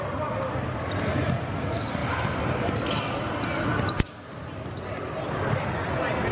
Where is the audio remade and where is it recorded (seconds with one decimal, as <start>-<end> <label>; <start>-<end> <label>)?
0.0-2.0 recorded; 2.0-2.8 remade; 2.8-6.3 recorded